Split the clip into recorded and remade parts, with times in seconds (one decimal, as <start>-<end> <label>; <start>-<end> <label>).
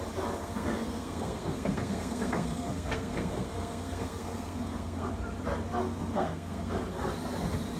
0.0-0.4 recorded; 0.4-5.1 remade; 5.1-5.8 recorded; 5.8-7.1 remade; 7.1-7.8 recorded